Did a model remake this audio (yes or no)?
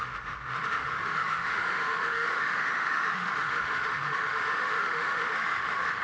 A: yes